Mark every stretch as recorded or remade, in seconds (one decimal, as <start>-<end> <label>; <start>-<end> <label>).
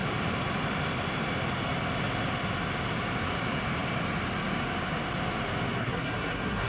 0.0-5.8 recorded; 5.8-6.7 remade